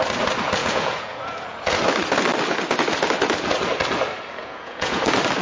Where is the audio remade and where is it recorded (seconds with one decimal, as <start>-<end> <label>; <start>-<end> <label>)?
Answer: 0.0-0.6 recorded; 0.6-1.8 remade; 1.8-4.4 recorded; 4.4-5.0 remade; 5.0-5.4 recorded